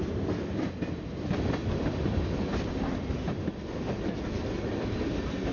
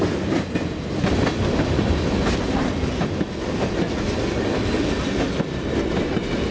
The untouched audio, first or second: second